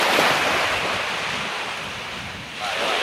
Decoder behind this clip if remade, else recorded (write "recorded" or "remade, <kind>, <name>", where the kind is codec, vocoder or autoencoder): recorded